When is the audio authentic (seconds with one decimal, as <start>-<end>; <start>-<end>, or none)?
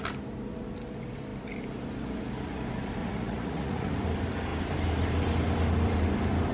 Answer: 0.0-3.0; 4.0-6.5